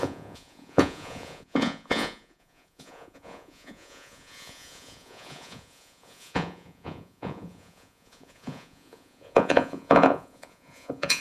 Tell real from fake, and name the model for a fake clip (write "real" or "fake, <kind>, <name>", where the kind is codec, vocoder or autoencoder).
fake, vocoder, Vocos